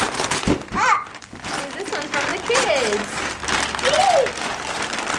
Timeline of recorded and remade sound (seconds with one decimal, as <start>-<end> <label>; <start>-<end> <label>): 0.0-5.2 recorded